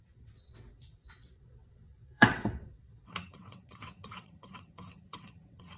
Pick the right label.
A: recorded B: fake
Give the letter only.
B